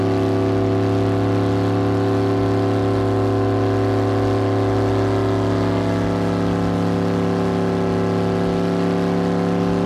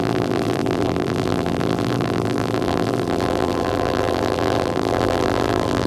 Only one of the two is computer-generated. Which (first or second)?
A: second